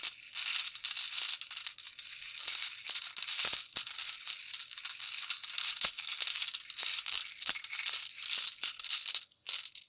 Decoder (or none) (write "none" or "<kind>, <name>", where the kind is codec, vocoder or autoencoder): none